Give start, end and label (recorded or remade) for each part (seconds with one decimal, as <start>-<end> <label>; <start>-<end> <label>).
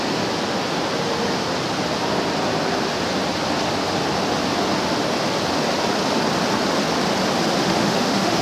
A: 0.0-7.6 recorded; 7.6-8.4 remade